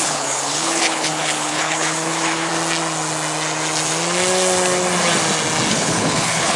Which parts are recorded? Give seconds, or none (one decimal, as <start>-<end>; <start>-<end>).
2.5-5.7